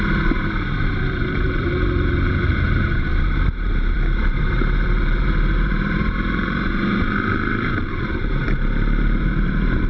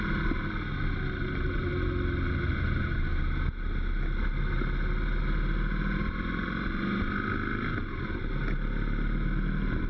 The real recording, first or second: second